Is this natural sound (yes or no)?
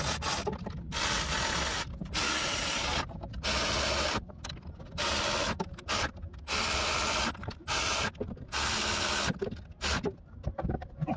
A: yes